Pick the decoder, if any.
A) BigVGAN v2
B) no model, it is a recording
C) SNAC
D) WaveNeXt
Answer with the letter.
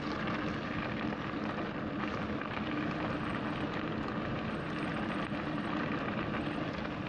B